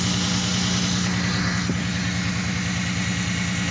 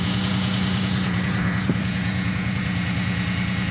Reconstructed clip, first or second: second